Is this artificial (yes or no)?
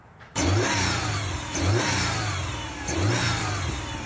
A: yes